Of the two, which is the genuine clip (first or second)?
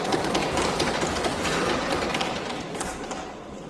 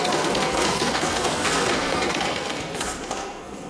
first